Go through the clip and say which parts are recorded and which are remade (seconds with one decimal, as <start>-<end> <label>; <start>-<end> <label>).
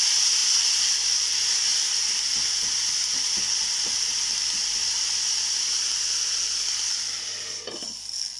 0.0-8.4 recorded